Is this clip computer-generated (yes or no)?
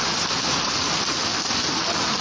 no